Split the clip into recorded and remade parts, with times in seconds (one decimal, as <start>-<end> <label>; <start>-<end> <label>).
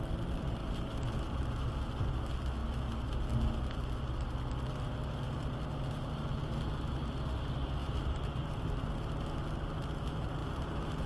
0.0-7.8 recorded; 7.8-8.9 remade; 8.9-10.4 recorded; 10.4-11.1 remade